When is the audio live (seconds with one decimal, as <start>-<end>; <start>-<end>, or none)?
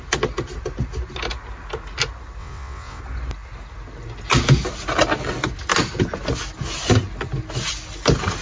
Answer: 0.0-2.4; 3.0-8.4